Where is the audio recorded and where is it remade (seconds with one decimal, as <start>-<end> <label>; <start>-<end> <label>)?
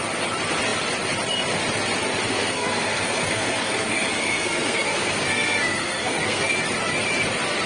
0.0-2.3 recorded; 2.3-6.5 remade; 6.5-7.7 recorded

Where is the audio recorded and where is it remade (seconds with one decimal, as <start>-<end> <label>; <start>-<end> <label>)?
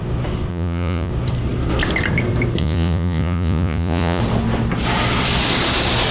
0.0-0.5 recorded; 0.5-1.1 remade; 1.1-2.6 recorded; 2.6-4.2 remade; 4.2-6.1 recorded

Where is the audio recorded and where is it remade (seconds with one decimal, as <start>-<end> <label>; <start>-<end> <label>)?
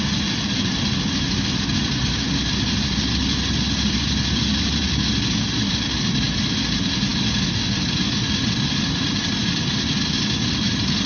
0.0-11.1 recorded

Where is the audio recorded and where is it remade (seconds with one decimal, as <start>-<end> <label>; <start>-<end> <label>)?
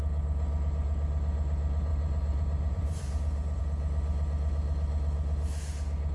0.0-1.9 recorded; 1.9-3.6 remade; 3.6-6.1 recorded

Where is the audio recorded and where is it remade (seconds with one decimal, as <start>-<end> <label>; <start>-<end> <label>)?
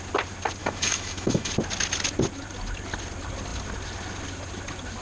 0.0-0.6 recorded; 0.6-1.5 remade; 1.5-5.0 recorded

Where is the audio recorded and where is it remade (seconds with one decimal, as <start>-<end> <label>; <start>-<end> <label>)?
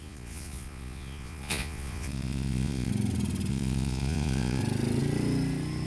0.0-2.9 remade; 2.9-3.5 recorded; 3.5-4.6 remade; 4.6-5.9 recorded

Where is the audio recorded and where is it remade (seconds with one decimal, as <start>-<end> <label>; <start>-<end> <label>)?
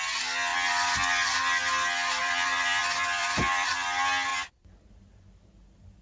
0.0-2.2 recorded; 2.2-2.8 remade; 2.8-3.2 recorded; 3.2-3.7 remade; 3.7-4.3 recorded; 4.3-4.9 remade; 4.9-6.0 recorded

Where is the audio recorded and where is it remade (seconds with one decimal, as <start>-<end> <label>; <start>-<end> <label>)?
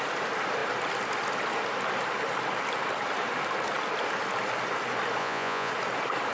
0.0-5.2 recorded; 5.2-5.7 remade; 5.7-6.3 recorded